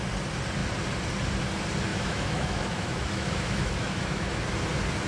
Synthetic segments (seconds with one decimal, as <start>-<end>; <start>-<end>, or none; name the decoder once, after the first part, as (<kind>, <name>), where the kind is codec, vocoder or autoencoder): 1.9-4.4 (autoencoder, DAC-VAE)